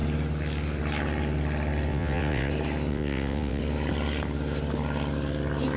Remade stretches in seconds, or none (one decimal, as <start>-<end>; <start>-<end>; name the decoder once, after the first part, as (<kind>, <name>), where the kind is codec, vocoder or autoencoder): 1.9-2.5 (vocoder, WaveNeXt); 2.9-3.6